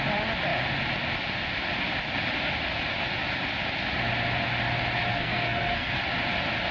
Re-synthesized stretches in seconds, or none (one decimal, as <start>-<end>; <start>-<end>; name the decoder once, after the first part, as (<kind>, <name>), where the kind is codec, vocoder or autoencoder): 5.1-6.0 (codec, SNAC)